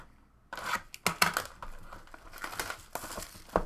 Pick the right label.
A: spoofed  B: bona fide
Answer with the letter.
B